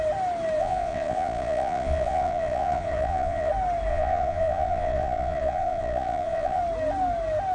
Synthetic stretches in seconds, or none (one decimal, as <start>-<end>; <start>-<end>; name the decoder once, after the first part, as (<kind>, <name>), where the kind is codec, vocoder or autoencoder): 0.6-3.5 (vocoder, Vocos); 3.9-6.6